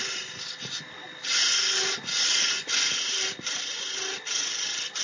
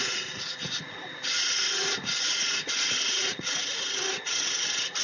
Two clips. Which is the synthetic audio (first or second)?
second